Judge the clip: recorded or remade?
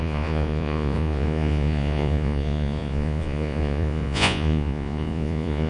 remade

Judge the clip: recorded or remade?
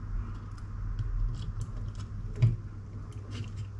recorded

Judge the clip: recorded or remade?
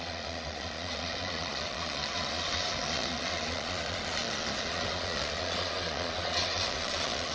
remade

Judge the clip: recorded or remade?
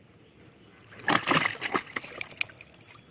recorded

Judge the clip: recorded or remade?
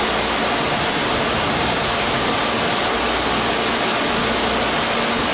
recorded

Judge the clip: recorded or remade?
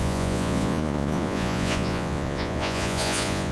remade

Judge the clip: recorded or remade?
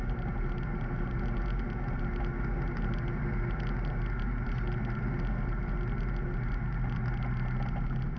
recorded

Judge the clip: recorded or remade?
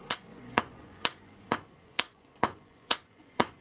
remade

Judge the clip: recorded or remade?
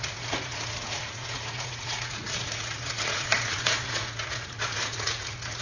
remade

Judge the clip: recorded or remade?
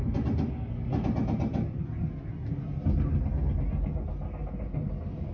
recorded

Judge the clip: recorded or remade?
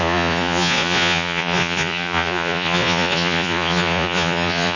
remade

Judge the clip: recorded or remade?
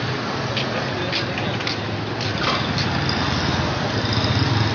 recorded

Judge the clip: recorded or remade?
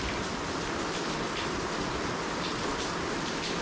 recorded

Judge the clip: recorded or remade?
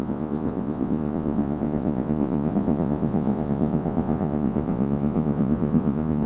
remade